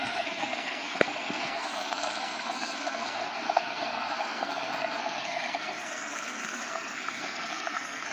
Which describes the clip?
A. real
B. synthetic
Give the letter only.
B